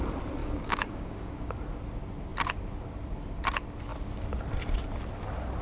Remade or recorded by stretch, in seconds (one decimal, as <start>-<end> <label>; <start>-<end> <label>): 0.0-0.4 recorded; 0.4-1.5 remade; 1.5-5.6 recorded